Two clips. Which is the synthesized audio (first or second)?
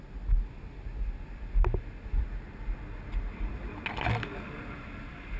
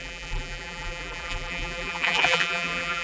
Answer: second